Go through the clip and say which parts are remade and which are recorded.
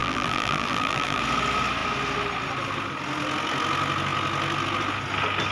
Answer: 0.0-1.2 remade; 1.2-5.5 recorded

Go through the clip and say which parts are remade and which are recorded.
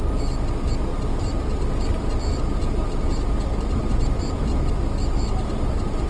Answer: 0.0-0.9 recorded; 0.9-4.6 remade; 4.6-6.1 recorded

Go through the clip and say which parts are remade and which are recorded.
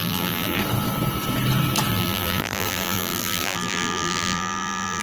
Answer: 0.0-0.6 remade; 0.6-1.9 recorded; 1.9-5.0 remade